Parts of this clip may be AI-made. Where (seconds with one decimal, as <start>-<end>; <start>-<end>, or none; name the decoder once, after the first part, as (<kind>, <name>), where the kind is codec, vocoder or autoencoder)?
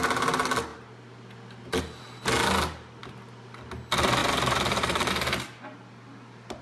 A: 4.2-5.1 (vocoder, BigVGAN v2)